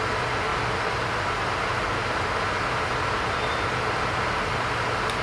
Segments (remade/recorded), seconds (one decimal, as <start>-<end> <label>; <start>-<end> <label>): 0.0-5.2 recorded